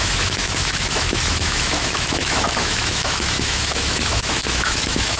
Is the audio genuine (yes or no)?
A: no